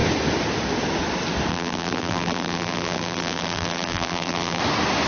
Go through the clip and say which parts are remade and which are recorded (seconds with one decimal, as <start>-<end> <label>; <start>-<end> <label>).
0.0-1.5 recorded; 1.5-4.6 remade; 4.6-5.1 recorded